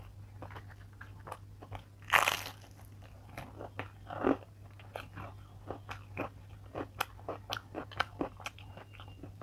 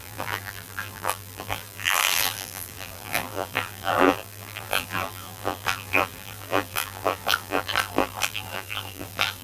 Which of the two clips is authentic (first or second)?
first